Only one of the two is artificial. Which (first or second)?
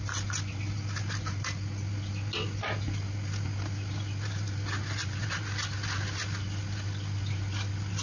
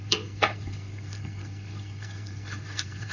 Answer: second